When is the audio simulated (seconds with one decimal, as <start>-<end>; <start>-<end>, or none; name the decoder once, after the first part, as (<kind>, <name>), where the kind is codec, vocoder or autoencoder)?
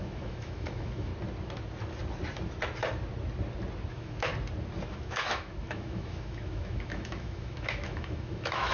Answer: 0.0-1.1 (autoencoder, DAC-VAE); 3.9-4.3; 4.9-8.7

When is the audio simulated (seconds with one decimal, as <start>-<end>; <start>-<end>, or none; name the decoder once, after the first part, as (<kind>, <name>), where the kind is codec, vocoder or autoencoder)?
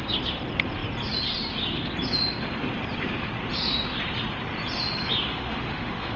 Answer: 5.3-6.2 (autoencoder, DAC-VAE)